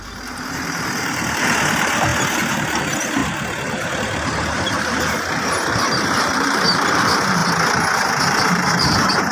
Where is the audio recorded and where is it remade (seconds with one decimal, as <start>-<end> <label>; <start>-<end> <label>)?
0.0-3.2 remade; 3.2-3.9 recorded; 3.9-7.4 remade; 7.4-8.1 recorded; 8.1-9.3 remade